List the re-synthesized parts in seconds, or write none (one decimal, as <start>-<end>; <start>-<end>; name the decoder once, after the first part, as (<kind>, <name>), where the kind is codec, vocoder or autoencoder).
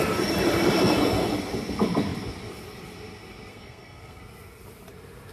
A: 3.5-4.2 (codec, SNAC)